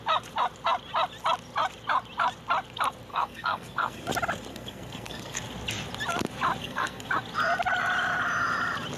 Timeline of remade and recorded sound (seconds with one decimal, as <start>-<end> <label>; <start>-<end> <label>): 0.0-3.1 recorded; 3.1-4.1 remade; 4.1-4.5 recorded; 4.5-5.4 remade; 5.4-6.6 recorded; 6.6-7.1 remade; 7.1-9.0 recorded